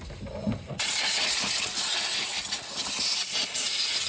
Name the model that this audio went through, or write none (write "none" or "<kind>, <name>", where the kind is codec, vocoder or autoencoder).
none